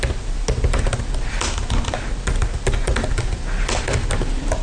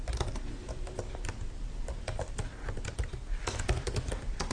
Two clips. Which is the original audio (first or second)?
first